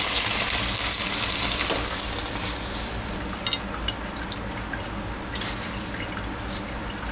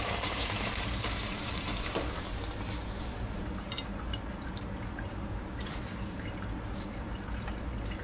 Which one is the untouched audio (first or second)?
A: first